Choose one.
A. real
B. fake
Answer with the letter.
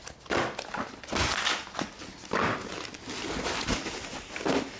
A